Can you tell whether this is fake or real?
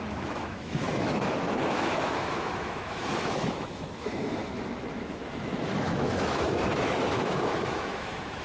fake